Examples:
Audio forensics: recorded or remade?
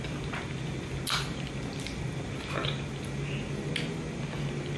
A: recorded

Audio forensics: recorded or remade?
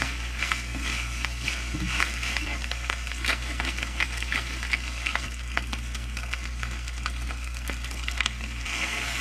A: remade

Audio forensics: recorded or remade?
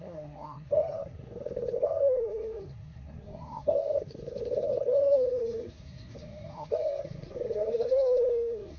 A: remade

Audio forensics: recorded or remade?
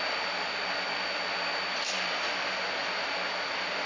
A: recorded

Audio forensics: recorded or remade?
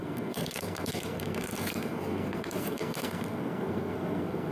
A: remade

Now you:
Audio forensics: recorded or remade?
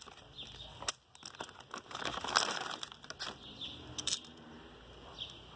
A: recorded